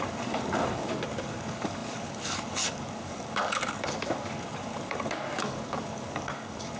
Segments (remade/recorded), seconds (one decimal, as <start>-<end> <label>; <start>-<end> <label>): 0.0-6.8 remade